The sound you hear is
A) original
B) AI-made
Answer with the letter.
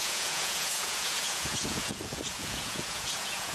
B